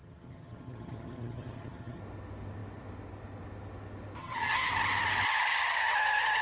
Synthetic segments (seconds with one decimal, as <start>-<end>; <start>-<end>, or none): 0.0-2.0; 4.2-4.7